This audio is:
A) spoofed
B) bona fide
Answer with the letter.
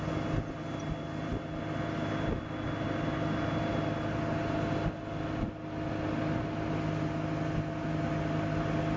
B